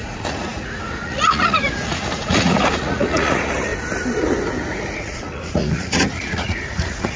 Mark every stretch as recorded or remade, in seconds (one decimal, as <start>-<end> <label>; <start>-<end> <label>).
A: 0.0-3.7 remade; 3.7-5.0 recorded; 5.0-7.2 remade